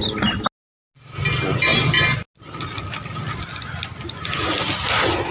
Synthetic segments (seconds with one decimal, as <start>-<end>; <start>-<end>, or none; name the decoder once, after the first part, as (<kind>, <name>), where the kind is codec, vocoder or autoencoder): none

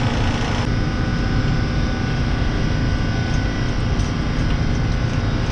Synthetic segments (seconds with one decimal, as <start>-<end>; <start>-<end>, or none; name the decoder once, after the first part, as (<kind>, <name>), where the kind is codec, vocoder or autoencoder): none

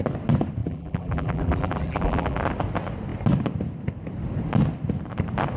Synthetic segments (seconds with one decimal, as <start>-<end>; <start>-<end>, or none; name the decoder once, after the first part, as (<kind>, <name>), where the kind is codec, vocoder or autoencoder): 0.6-2.4 (vocoder, BigVGAN v2)

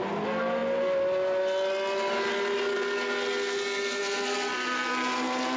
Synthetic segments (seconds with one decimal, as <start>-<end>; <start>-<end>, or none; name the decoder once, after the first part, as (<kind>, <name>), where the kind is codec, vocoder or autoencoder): none

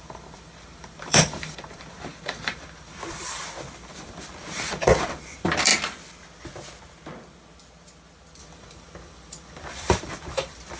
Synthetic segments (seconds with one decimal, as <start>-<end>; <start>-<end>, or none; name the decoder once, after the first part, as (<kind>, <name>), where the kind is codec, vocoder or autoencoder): 0.0-5.7 (vocoder, BigVGAN v2); 8.4-10.8

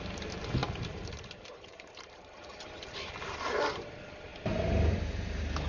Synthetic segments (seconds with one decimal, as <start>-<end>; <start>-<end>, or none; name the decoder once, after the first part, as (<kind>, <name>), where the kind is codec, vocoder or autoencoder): 0.6-2.6 (vocoder, BigVGAN v2)